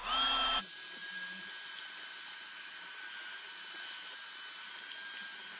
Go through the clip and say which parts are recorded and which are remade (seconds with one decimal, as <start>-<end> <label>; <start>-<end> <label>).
0.0-5.6 recorded